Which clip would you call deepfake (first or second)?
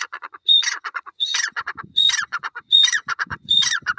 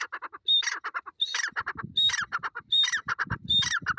first